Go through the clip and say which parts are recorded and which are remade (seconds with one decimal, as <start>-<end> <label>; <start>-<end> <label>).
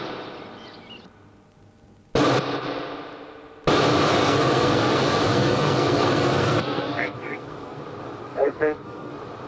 0.0-4.1 recorded; 4.1-7.8 remade; 7.8-8.2 recorded; 8.2-9.1 remade; 9.1-9.5 recorded